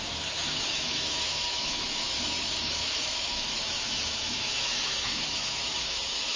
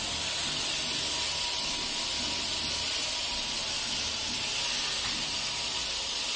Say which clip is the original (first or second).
second